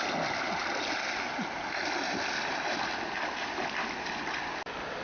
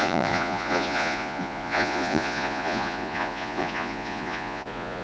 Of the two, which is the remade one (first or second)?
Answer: second